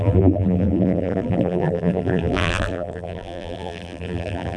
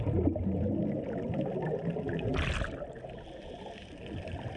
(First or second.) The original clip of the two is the second